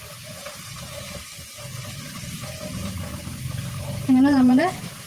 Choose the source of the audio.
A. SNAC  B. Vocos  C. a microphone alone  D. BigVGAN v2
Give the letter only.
D